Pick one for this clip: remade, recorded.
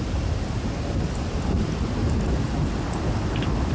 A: recorded